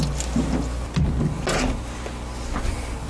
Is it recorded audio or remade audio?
recorded